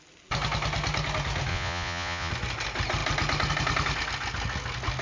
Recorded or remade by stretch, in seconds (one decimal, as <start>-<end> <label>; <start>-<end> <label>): 0.0-1.5 recorded; 1.5-2.3 remade; 2.3-5.0 recorded